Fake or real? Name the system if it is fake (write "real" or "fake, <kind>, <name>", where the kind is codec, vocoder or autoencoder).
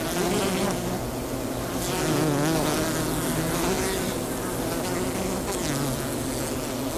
real